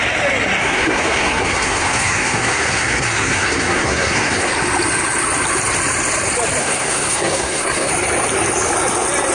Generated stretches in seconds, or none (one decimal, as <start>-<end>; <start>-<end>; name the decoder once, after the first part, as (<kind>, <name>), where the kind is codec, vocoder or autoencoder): 0.6-4.5 (codec, SNAC); 6.6-7.9